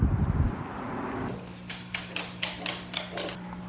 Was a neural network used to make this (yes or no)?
no